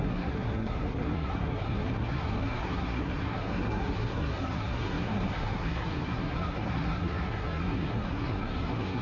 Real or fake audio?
fake